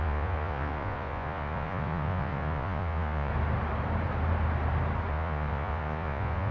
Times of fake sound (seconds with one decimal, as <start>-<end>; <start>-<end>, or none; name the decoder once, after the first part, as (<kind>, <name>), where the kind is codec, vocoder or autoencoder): 0.0-3.3 (vocoder, Vocos); 5.1-6.5